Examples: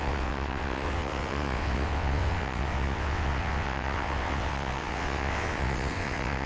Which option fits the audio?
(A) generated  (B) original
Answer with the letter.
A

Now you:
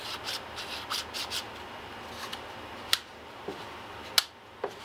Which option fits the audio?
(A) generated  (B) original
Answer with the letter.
B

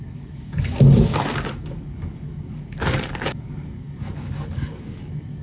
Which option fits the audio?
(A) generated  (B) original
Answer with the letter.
A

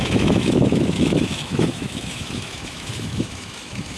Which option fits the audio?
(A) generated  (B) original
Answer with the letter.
A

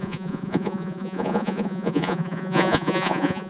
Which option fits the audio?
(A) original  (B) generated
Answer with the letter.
B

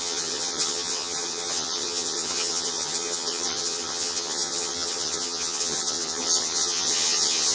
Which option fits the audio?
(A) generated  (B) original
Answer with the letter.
A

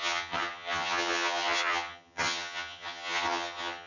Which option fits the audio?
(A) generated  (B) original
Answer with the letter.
A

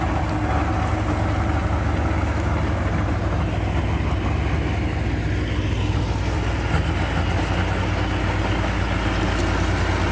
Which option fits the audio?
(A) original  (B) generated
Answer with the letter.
A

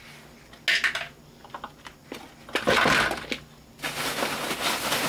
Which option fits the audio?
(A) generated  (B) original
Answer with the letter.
B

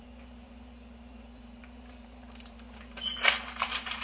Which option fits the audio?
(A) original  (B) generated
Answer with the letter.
B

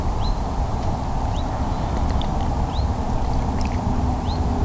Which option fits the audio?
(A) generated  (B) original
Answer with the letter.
A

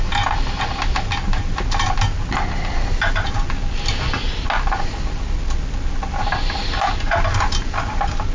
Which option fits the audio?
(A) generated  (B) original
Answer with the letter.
B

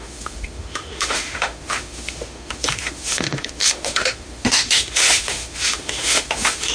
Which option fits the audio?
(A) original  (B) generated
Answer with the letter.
B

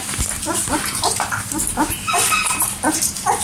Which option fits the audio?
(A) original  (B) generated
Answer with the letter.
B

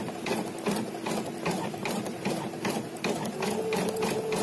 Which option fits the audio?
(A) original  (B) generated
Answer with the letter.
A